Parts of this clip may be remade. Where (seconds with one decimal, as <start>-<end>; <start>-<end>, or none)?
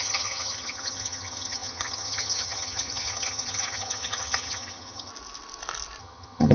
0.0-5.1; 6.0-6.5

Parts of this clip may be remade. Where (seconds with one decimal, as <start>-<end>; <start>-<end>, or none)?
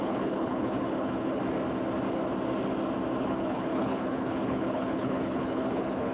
0.0-1.4; 3.2-6.1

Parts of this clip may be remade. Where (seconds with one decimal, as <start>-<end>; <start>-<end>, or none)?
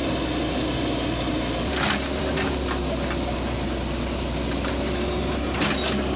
none